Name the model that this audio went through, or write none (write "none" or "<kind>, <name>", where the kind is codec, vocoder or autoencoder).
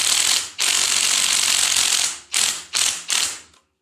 none